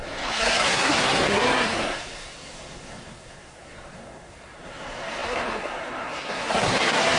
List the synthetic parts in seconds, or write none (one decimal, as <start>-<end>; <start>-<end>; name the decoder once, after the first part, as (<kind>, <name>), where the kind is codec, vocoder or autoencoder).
0.0-7.2 (codec, SNAC)